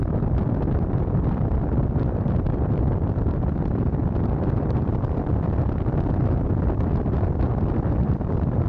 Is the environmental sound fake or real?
fake